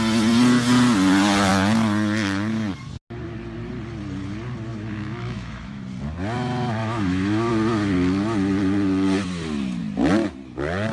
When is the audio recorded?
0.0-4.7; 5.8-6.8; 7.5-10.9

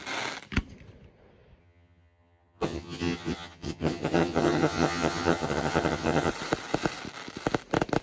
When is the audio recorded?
0.0-1.6; 6.3-8.0

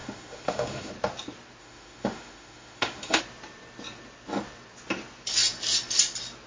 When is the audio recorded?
0.9-1.6; 3.2-6.5

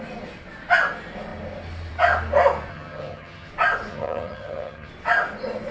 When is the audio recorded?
0.0-2.7; 3.5-3.9; 4.9-5.7

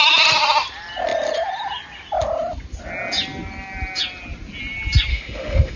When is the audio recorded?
0.0-5.1

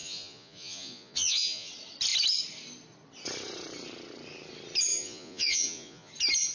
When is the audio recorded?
1.7-4.9; 6.1-6.5